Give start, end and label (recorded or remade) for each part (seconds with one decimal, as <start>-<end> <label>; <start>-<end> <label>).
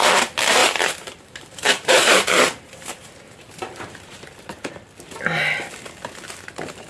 0.0-0.6 recorded; 0.6-4.7 remade; 4.7-6.9 recorded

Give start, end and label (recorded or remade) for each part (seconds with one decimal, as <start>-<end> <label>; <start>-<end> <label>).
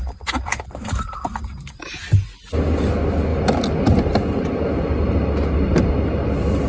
0.0-6.7 recorded